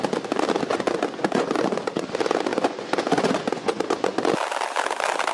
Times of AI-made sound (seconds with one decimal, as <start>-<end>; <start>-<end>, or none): 0.7-1.9; 2.5-4.2